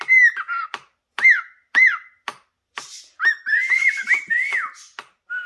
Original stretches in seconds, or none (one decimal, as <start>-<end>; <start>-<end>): 0.0-5.5